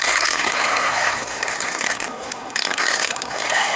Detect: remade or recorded remade